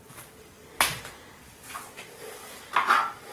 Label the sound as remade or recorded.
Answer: recorded